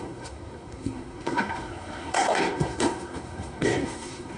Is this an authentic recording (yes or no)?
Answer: no